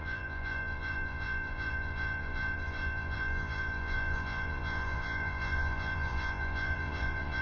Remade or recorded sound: remade